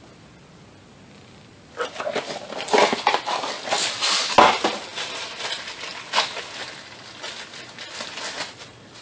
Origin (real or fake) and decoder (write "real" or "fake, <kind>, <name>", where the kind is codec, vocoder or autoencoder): real